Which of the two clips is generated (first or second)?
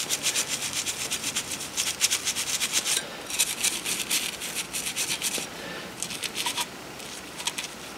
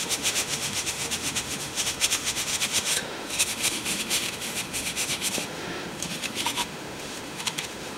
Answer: second